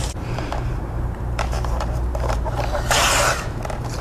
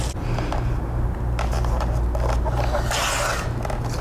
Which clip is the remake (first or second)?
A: first